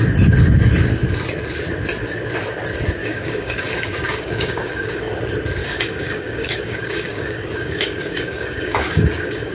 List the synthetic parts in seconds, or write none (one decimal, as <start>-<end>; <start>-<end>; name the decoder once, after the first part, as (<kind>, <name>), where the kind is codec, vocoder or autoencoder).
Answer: 3.0-5.1 (codec, DAC); 5.6-9.5

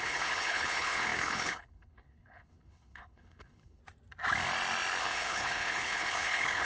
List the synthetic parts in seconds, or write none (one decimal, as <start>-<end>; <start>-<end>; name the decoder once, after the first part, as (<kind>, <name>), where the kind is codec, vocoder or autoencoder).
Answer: 0.0-3.8 (codec, HILCodec); 5.0-6.7

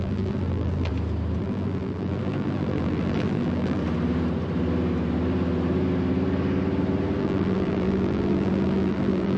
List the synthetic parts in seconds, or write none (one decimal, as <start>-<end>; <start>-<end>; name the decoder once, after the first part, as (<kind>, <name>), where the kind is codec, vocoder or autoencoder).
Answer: 0.0-0.9 (vocoder, BigVGAN v2); 1.4-3.8; 7.2-9.4

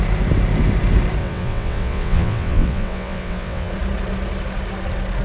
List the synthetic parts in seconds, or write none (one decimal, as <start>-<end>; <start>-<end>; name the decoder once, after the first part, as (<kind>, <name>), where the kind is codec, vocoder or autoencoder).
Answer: 1.2-3.7 (vocoder, WaveNeXt)

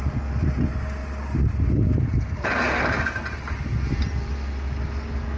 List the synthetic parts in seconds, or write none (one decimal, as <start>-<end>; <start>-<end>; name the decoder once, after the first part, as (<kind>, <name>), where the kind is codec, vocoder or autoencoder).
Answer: none

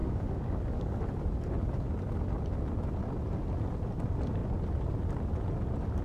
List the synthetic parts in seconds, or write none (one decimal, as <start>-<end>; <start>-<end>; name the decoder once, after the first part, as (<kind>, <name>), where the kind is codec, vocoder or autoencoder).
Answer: 0.0-1.0 (codec, DAC)

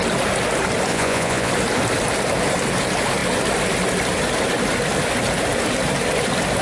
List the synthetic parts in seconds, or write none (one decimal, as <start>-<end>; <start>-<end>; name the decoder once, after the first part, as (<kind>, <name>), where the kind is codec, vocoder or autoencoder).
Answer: 0.9-1.5 (vocoder, Vocos)

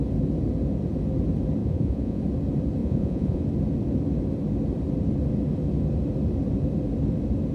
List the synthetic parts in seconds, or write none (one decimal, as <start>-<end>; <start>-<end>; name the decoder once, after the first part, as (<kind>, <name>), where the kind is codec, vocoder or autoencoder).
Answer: 1.6-2.2 (vocoder, Vocos); 2.8-3.4